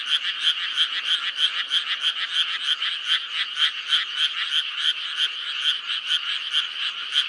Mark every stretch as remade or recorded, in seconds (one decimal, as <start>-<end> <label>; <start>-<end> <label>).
0.0-7.3 recorded

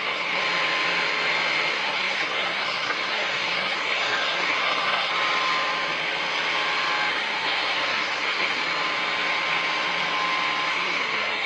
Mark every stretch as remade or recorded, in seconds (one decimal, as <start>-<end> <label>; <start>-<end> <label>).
0.0-0.4 remade; 0.4-1.7 recorded; 1.7-5.1 remade; 5.1-7.1 recorded; 7.1-8.6 remade; 8.6-10.7 recorded; 10.7-11.5 remade

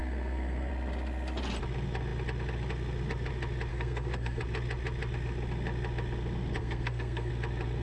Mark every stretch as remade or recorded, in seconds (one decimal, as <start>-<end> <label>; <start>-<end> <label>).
0.0-0.7 remade; 0.7-3.7 recorded; 3.7-4.4 remade; 4.4-6.6 recorded; 6.6-7.3 remade; 7.3-7.8 recorded

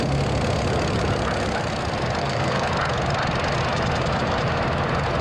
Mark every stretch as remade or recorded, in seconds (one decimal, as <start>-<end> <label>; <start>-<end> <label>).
0.0-2.2 recorded; 2.2-2.7 remade; 2.7-5.2 recorded

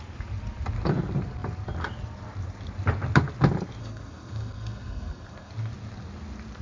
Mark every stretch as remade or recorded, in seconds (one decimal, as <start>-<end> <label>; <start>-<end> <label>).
0.0-3.8 recorded; 3.8-5.5 remade; 5.5-6.6 recorded

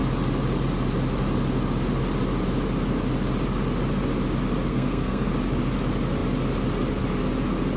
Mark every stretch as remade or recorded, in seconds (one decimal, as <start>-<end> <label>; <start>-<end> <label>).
0.0-4.7 recorded; 4.7-5.3 remade; 5.3-7.8 recorded